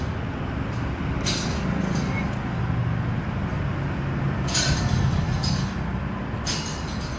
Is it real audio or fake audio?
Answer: real